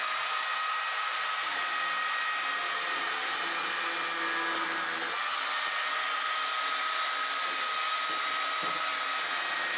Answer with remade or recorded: recorded